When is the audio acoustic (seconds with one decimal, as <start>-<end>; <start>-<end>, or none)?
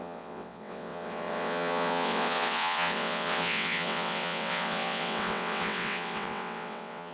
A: none